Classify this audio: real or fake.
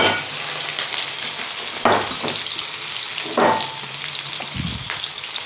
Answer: real